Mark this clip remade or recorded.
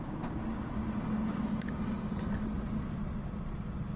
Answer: recorded